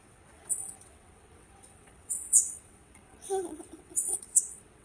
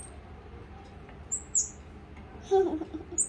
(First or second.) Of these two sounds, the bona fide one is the second